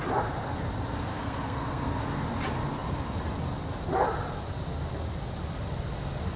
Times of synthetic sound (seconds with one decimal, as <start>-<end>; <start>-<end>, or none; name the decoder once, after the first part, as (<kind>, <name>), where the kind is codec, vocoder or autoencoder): 1.1-2.0 (codec, SNAC)